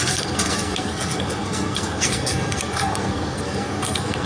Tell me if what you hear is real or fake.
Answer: fake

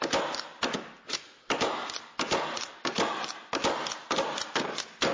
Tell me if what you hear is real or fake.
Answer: real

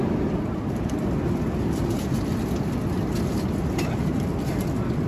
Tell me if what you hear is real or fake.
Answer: real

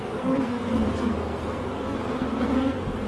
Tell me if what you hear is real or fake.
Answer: fake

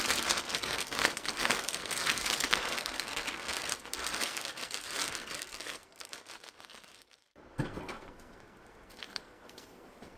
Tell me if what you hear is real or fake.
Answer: fake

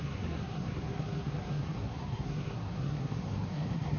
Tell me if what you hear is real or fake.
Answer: fake